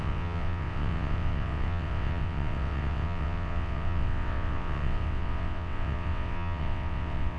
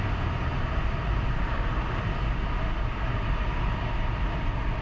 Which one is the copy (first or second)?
first